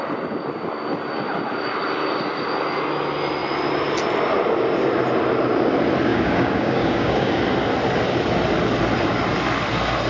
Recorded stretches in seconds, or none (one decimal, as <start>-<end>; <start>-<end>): 0.0-6.1; 7.4-10.1